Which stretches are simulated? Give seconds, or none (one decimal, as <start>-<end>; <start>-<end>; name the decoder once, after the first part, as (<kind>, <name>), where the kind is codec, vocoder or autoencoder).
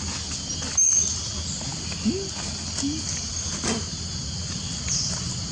none